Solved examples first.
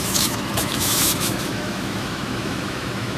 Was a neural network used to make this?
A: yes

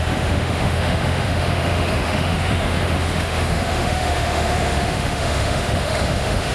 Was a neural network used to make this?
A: yes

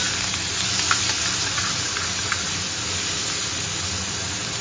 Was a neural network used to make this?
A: no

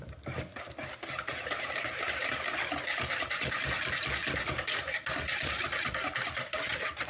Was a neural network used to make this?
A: no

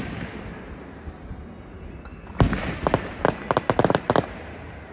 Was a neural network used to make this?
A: no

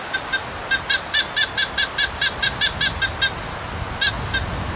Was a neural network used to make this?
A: no